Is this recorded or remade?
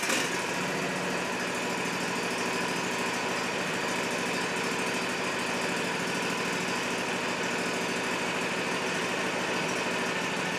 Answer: recorded